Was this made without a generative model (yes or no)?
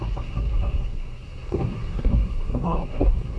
no